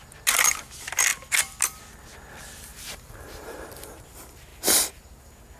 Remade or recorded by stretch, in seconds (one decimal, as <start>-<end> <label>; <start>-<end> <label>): 0.0-2.7 recorded; 2.7-3.7 remade; 3.7-4.5 recorded; 4.5-5.0 remade; 5.0-5.6 recorded